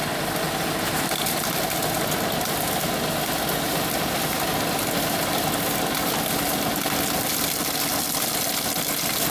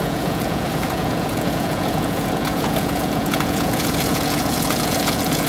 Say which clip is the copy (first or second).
second